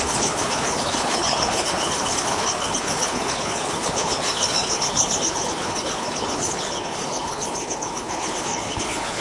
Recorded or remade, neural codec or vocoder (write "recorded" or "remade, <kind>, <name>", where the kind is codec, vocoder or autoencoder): remade, codec, HILCodec